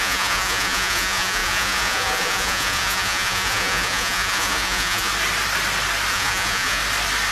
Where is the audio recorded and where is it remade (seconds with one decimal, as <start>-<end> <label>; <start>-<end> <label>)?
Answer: 0.0-5.1 remade; 5.1-6.1 recorded; 6.1-6.8 remade; 6.8-7.3 recorded